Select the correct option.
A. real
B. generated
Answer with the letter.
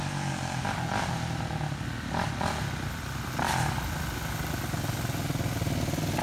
A